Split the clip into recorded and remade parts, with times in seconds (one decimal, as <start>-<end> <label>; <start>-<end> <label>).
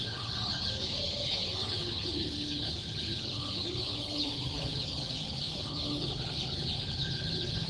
0.0-7.7 remade